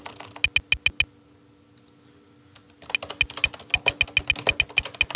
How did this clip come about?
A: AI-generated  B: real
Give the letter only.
B